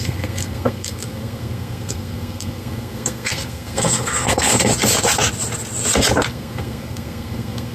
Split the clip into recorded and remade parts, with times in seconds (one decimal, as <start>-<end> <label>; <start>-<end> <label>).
0.0-4.7 remade; 4.7-6.3 recorded; 6.3-7.7 remade